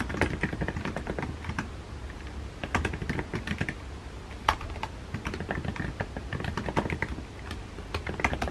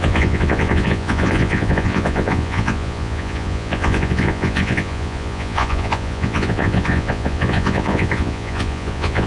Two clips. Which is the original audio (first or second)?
first